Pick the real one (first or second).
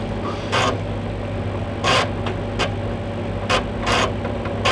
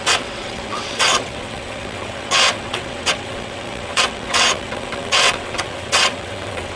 first